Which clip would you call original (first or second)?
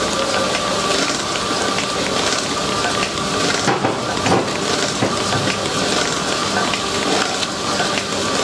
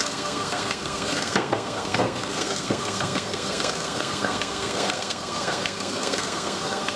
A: first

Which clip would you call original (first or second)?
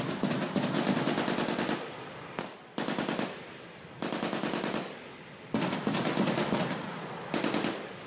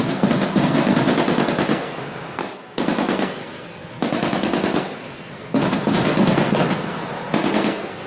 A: first